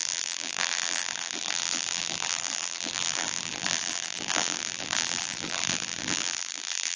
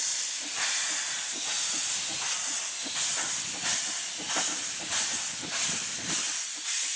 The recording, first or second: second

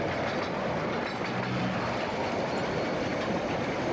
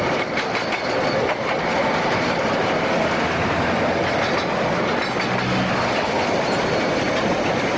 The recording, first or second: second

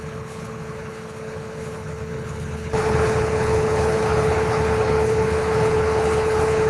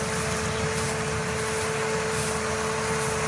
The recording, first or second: second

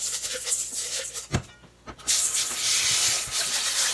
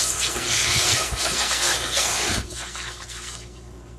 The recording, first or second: first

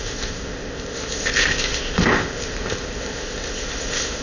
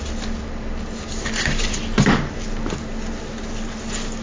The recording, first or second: second